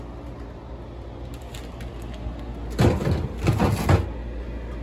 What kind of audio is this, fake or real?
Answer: real